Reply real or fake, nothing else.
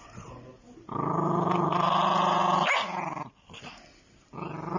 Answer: real